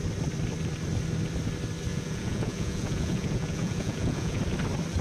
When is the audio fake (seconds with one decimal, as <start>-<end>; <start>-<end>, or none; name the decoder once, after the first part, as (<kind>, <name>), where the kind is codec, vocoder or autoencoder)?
1.9-4.4 (vocoder, Vocos)

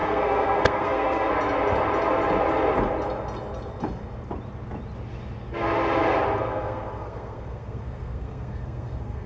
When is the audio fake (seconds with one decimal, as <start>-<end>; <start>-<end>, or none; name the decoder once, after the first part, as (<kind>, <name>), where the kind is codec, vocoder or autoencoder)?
0.0-1.3 (codec, SNAC); 6.4-9.3

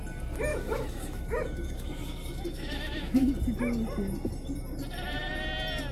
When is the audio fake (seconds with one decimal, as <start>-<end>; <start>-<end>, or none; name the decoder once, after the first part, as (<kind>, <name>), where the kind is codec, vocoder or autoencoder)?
0.5-3.3 (autoencoder, DAC-VAE)

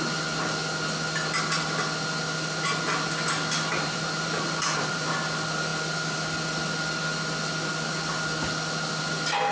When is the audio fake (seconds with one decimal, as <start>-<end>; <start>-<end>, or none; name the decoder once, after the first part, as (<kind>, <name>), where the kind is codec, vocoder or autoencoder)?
3.7-5.1 (vocoder, BigVGAN v2)